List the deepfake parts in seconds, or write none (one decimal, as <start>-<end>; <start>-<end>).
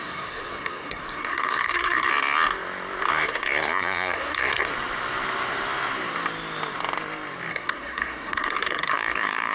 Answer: 0.0-2.1; 3.1-4.7; 7.5-9.5